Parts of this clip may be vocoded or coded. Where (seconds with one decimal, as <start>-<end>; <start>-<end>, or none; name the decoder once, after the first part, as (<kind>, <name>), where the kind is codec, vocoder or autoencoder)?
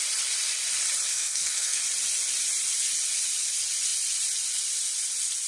1.1-1.8 (codec, SNAC)